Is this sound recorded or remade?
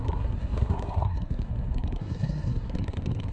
remade